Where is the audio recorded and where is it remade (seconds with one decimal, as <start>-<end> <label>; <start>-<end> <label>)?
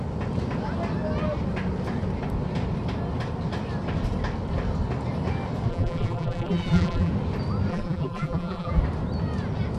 0.0-5.7 recorded; 5.7-7.1 remade; 7.1-7.7 recorded; 7.7-8.8 remade; 8.8-9.8 recorded